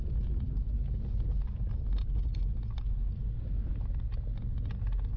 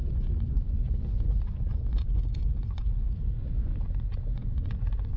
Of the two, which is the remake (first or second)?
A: second